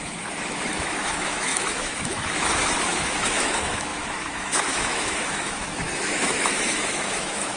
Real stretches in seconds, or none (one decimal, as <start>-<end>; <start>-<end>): none